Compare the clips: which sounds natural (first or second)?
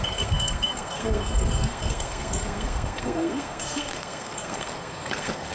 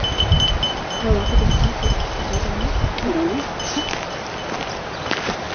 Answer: second